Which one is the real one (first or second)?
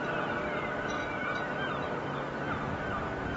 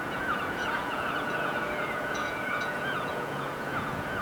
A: first